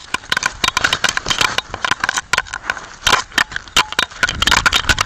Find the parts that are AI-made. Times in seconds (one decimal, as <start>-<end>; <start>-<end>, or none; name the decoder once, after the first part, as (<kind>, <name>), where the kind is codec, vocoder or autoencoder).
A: none